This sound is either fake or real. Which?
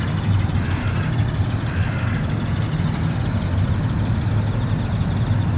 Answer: real